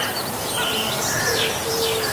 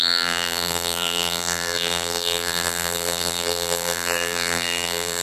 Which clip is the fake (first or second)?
second